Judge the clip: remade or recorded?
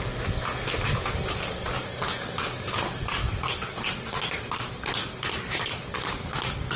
recorded